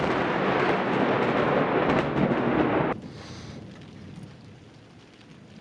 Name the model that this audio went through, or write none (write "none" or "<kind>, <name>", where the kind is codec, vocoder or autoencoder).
none